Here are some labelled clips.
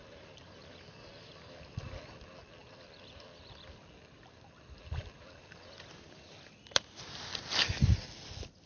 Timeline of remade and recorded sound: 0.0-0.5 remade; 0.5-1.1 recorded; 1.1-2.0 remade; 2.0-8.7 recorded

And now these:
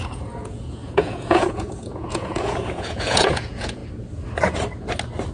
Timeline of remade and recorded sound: 0.0-3.8 remade; 3.8-5.3 recorded

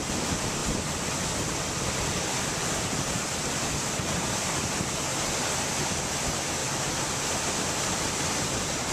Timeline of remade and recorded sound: 0.0-0.6 recorded; 0.6-1.8 remade; 1.8-6.6 recorded; 6.6-8.9 remade

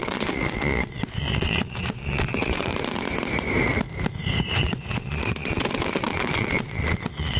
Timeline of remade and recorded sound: 0.0-2.7 remade; 2.7-4.5 recorded; 4.5-7.4 remade

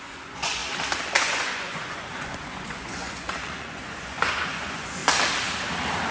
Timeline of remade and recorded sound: 0.0-0.6 remade; 0.6-1.2 recorded; 1.2-5.0 remade; 5.0-6.1 recorded